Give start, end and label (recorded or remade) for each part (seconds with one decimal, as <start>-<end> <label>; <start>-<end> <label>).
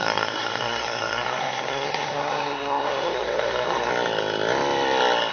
0.0-3.9 remade; 3.9-5.3 recorded